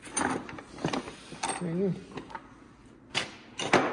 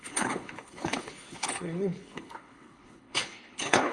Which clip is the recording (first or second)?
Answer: first